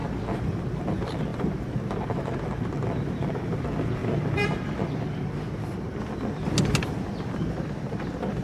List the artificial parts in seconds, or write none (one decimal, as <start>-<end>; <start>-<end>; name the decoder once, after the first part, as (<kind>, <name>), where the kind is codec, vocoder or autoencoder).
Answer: none